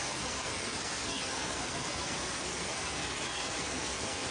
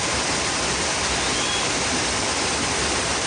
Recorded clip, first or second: second